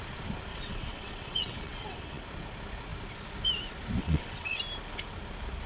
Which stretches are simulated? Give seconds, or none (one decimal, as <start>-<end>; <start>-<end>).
0.5-2.2; 4.0-4.6